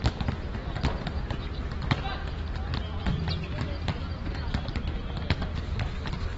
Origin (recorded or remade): recorded